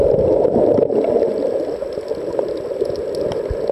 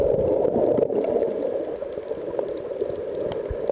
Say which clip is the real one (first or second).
first